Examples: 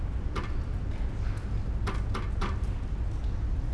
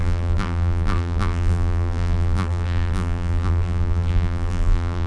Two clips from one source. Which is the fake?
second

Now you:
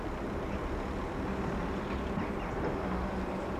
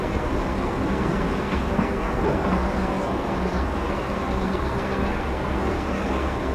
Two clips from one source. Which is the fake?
second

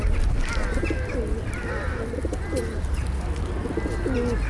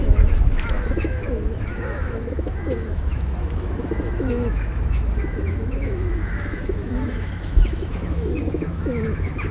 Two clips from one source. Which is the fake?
second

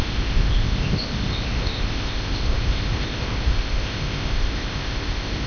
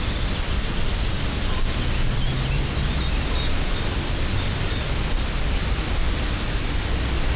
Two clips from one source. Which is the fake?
first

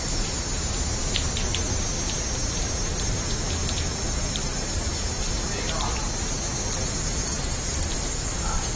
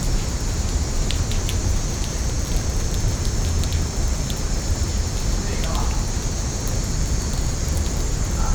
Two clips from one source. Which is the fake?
second